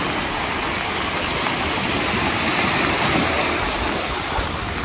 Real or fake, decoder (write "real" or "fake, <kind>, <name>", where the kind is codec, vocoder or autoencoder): real